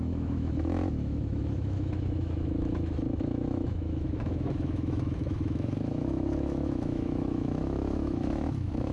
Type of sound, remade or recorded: remade